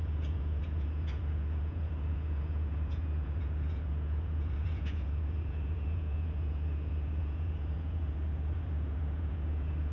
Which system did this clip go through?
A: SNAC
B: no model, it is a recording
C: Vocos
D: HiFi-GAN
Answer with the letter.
C